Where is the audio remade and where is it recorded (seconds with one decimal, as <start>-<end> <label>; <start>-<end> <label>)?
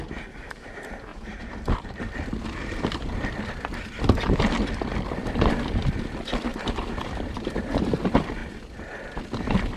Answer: 0.0-1.1 recorded; 1.1-3.2 remade; 3.2-6.5 recorded; 6.5-8.0 remade; 8.0-9.8 recorded